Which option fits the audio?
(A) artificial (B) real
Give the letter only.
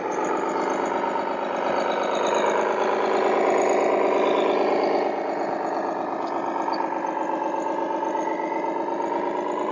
B